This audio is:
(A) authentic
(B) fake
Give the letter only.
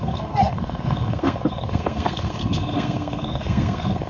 B